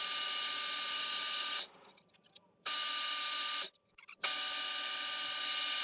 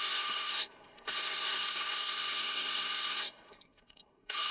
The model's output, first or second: second